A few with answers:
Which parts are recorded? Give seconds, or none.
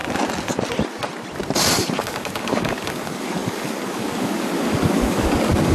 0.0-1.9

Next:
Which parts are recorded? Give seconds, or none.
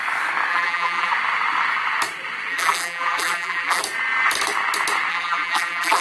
0.0-0.5; 1.1-2.5; 3.8-5.1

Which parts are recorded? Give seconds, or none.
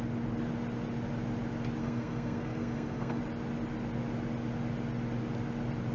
0.0-1.8; 3.2-5.9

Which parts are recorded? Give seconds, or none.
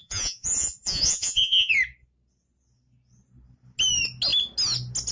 1.7-5.1